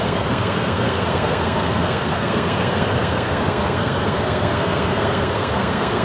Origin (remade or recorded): remade